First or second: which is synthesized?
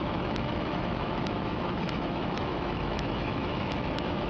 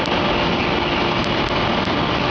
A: first